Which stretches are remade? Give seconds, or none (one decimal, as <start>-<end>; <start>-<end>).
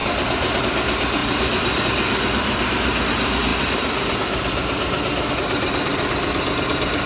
1.2-1.8; 5.9-6.5